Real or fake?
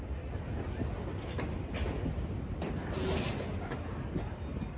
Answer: real